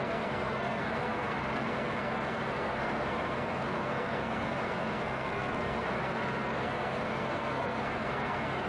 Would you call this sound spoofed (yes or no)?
yes